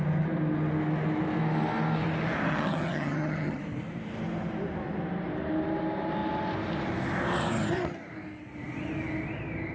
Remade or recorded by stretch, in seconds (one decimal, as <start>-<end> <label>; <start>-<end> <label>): 0.0-2.5 recorded; 2.5-3.6 remade; 3.6-9.7 recorded